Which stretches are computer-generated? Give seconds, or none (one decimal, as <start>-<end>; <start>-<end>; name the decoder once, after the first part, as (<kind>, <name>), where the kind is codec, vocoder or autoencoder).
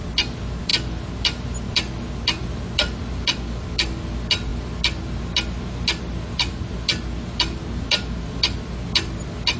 none